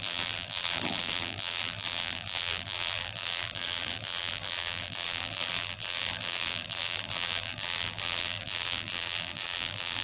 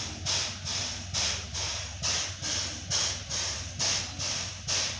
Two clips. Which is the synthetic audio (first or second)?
first